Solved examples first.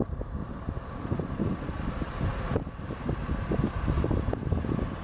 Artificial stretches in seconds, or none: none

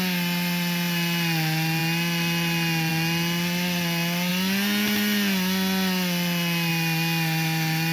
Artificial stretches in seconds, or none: none

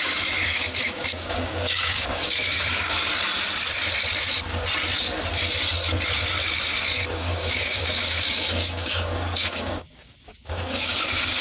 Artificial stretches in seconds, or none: 0.0-3.1 (codec, DAC); 7.1-11.4

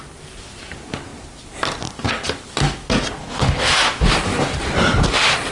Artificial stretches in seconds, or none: 3.2-3.7 (codec, HILCodec)

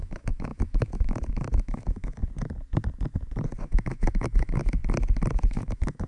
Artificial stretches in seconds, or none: 0.0-2.2 (autoencoder, DAC-VAE); 3.6-4.8; 5.5-6.1

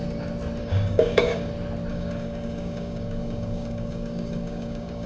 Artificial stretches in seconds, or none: 0.6-1.5 (codec, DAC); 1.9-5.1

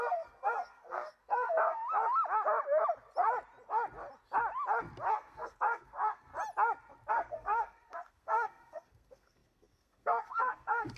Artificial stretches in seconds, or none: 0.0-1.8 (codec, SNAC); 5.1-6.3; 7.1-11.0